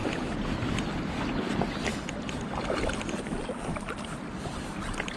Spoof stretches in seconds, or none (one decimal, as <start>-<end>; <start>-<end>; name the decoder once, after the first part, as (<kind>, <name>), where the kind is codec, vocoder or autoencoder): none